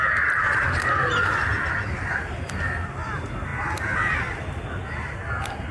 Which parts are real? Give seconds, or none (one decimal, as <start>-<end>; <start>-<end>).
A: 0.0-5.7